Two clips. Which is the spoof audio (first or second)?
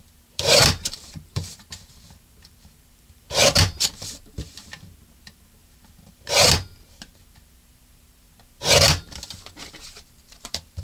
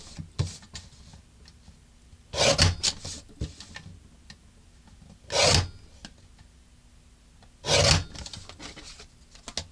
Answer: first